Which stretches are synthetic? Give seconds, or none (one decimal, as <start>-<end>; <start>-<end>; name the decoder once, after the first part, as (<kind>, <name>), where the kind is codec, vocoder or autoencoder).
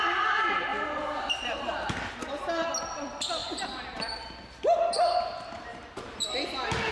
0.7-1.8 (vocoder, BigVGAN v2); 5.7-6.3